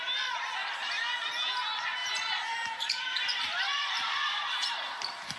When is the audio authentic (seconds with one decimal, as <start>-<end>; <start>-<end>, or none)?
0.0-0.6; 1.3-2.0